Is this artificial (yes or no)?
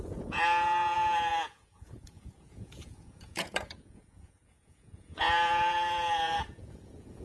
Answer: yes